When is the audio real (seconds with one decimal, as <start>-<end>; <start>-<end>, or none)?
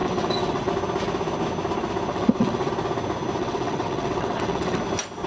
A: 0.7-2.1; 2.7-3.4; 4.8-5.3